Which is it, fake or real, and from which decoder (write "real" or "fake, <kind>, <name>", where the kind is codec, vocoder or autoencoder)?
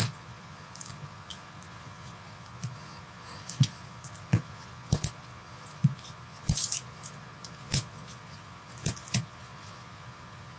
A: fake, vocoder, Vocos